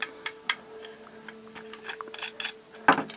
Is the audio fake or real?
real